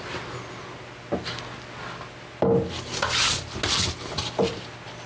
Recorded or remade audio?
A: recorded